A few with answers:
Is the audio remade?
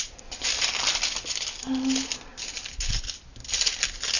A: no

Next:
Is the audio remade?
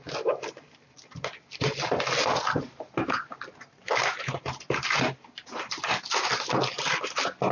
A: no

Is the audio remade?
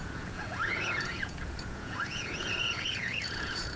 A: yes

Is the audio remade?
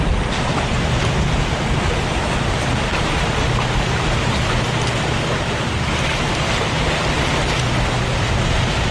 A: no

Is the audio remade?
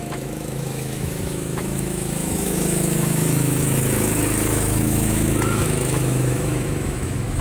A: yes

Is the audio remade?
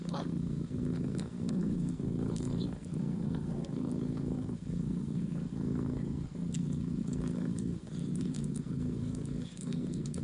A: yes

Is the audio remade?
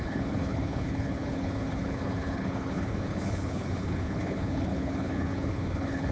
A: yes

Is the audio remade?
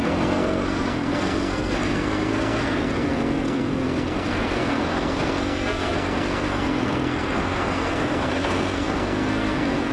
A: yes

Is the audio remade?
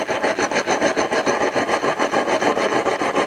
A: no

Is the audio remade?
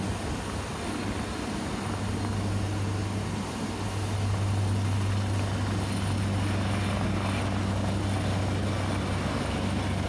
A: no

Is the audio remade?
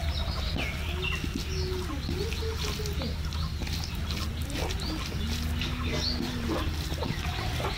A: no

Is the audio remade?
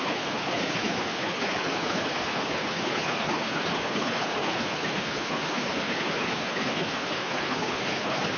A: yes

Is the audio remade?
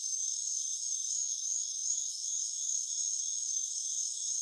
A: yes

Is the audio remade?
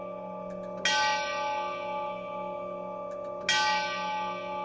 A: no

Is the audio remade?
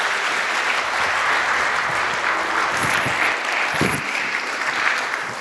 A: no